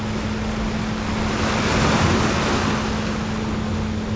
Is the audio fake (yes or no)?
no